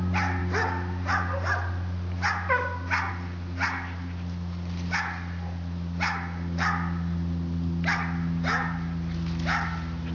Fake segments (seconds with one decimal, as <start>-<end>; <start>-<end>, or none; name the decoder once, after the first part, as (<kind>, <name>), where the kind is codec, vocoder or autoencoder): none